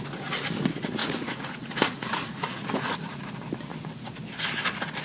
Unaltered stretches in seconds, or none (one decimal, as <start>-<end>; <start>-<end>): 0.0-1.0; 3.3-3.7; 4.2-5.0